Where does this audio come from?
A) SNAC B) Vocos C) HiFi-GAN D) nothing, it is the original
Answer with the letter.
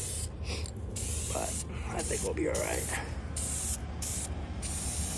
D